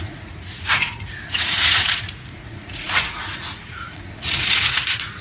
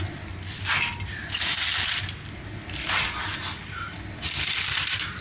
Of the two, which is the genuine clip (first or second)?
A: second